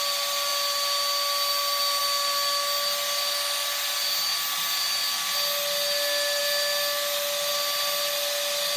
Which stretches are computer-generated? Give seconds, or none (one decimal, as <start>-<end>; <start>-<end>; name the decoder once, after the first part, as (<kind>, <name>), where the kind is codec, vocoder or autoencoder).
none